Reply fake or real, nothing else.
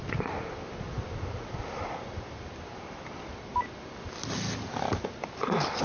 real